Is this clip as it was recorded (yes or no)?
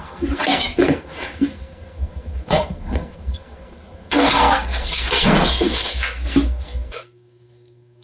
no